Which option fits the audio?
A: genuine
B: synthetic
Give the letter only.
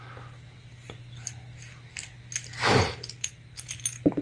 A